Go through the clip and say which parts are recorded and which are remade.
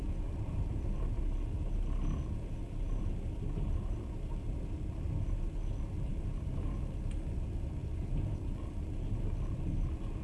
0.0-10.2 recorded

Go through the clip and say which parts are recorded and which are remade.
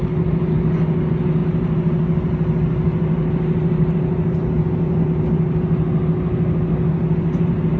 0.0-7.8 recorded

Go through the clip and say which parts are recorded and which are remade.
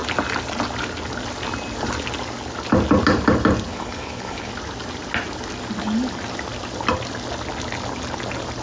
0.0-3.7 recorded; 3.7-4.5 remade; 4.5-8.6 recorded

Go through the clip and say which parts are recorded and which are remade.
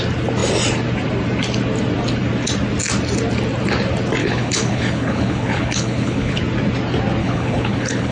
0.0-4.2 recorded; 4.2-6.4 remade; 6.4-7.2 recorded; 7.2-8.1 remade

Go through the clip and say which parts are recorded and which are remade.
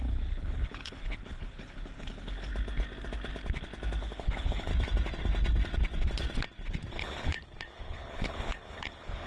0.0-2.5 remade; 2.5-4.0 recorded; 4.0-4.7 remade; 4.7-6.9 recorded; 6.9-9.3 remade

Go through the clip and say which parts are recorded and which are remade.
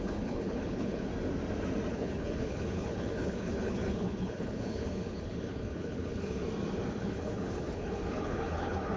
0.0-1.1 remade; 1.1-1.9 recorded; 1.9-6.4 remade; 6.4-7.0 recorded; 7.0-9.0 remade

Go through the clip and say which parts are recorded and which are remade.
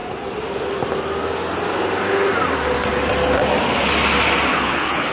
0.0-4.5 recorded; 4.5-5.1 remade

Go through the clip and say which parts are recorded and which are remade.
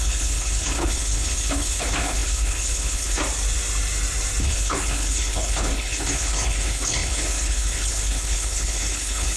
0.0-3.2 remade; 3.2-4.4 recorded; 4.4-9.4 remade